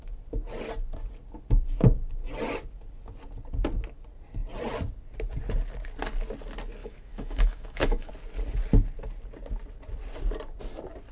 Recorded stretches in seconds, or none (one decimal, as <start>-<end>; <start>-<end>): 0.0-6.8; 8.1-11.1